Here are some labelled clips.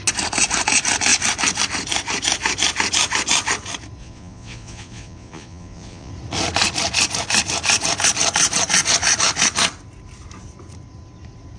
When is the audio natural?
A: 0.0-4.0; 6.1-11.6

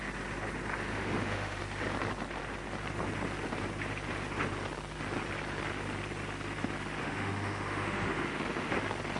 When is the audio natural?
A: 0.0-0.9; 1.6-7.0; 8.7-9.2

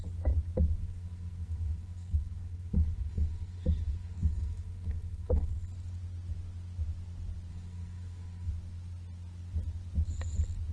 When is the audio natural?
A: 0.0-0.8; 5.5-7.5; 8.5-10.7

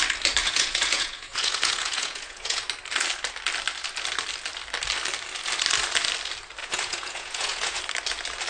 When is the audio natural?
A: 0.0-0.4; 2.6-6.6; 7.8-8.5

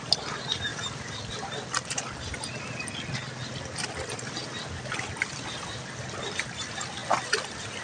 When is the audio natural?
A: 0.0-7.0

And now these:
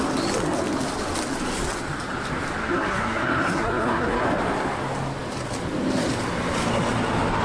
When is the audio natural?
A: 0.0-2.6; 4.2-7.4